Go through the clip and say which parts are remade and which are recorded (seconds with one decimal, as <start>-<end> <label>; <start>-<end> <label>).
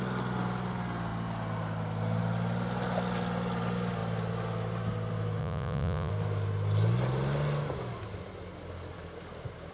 0.0-5.4 recorded; 5.4-6.1 remade; 6.1-9.7 recorded